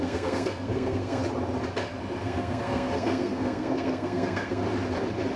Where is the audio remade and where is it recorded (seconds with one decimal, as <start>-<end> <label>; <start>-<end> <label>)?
0.0-1.2 remade; 1.2-2.2 recorded; 2.2-4.6 remade; 4.6-5.4 recorded